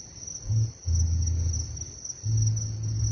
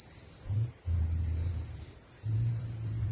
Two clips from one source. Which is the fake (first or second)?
second